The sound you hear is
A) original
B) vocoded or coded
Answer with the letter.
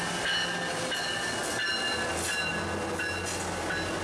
A